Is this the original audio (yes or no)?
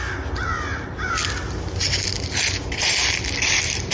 yes